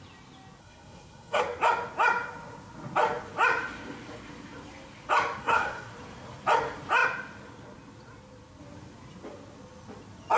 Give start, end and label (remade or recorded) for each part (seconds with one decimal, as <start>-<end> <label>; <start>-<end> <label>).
0.0-0.6 recorded; 0.6-1.4 remade; 1.4-5.4 recorded; 5.4-5.9 remade; 5.9-10.4 recorded